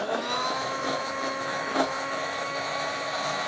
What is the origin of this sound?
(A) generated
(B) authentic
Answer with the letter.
A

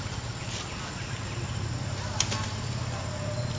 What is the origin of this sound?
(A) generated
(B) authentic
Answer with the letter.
B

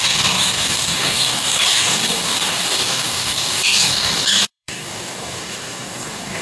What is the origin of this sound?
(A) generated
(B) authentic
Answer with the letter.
A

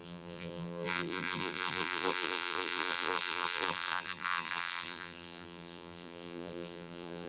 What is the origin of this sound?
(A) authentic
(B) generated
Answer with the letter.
B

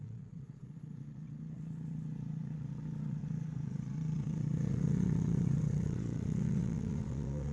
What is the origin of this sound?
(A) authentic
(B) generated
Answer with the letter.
B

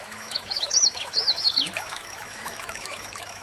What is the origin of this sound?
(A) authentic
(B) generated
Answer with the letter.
B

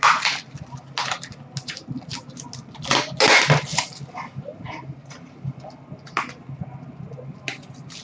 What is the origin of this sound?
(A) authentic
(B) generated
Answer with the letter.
A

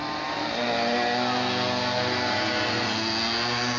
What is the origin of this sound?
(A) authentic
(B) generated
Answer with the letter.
A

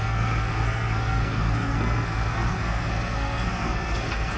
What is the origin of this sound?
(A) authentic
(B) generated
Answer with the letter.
B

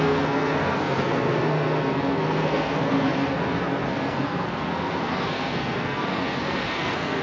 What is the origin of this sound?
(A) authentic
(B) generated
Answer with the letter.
B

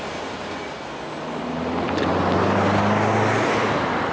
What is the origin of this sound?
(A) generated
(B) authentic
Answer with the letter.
B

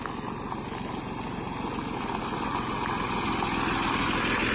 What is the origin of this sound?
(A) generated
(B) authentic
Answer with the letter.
B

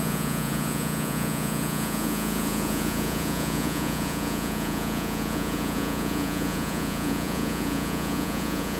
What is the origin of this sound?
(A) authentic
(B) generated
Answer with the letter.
B